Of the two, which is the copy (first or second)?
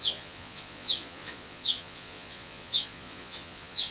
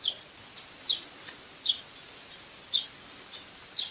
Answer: first